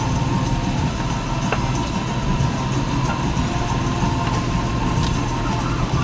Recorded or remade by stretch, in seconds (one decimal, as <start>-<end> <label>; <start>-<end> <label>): 0.0-6.0 recorded